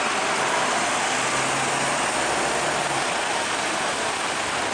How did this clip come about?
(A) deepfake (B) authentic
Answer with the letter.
B